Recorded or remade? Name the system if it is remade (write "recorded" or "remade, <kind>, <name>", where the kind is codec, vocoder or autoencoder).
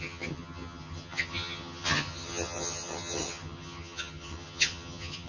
remade, vocoder, HiFi-GAN